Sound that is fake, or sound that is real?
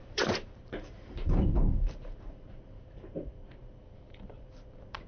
fake